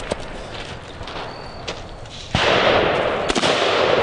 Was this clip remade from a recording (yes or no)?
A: no